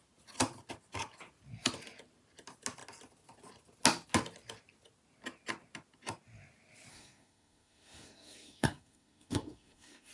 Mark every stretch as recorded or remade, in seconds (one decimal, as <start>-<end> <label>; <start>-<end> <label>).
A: 0.0-6.9 recorded; 6.9-10.1 remade